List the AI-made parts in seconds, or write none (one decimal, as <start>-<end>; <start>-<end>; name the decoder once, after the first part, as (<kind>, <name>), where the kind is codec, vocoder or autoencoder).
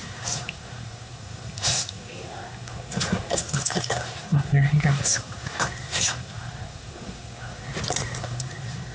0.0-7.7 (codec, SNAC); 8.2-8.9